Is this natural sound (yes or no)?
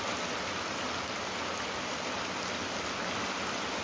yes